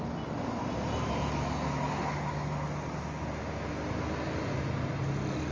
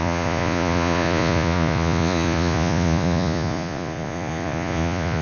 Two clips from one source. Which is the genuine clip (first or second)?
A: first